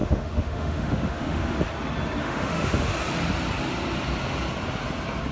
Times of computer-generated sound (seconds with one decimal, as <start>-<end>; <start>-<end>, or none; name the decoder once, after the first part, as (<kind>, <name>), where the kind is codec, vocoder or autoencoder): 0.0-1.4 (autoencoder, DAC-VAE); 2.2-2.9